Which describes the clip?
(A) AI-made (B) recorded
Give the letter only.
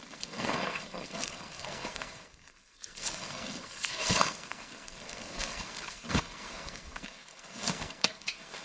A